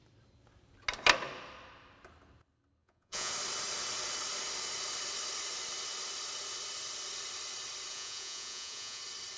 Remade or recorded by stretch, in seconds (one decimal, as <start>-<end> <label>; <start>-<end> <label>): 0.0-2.8 recorded; 2.8-3.3 remade; 3.3-7.9 recorded; 7.9-9.0 remade; 9.0-9.4 recorded